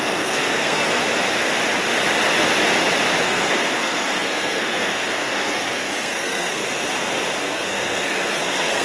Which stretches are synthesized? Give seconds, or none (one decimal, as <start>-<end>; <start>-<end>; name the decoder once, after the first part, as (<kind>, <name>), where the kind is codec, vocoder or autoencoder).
0.0-1.0 (codec, SNAC); 3.2-6.6; 7.4-8.8